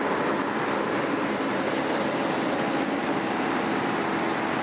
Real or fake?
real